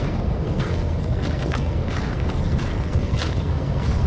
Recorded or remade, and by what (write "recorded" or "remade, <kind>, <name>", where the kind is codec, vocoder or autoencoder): remade, codec, SNAC